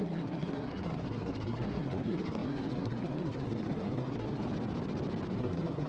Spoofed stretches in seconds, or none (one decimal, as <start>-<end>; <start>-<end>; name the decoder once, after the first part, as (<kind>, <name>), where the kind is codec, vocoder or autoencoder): 0.0-4.4 (codec, SNAC); 5.4-5.9